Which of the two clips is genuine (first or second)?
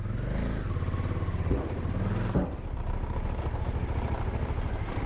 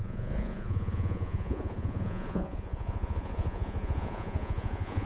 first